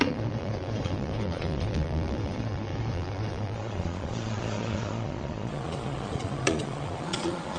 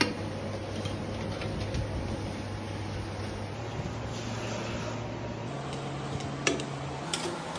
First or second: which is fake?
first